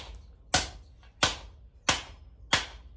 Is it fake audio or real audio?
real